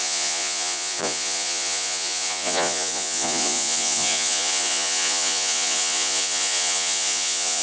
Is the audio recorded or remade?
remade